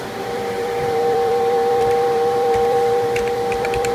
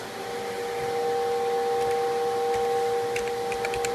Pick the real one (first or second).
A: second